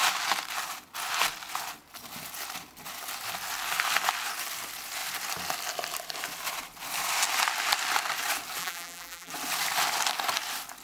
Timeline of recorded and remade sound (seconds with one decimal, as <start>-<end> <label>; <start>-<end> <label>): 0.0-8.6 recorded; 8.6-9.3 remade; 9.3-10.8 recorded